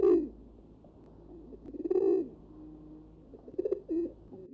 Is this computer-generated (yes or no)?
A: no